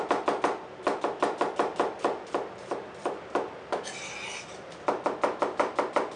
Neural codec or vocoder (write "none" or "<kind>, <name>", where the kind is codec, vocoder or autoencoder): none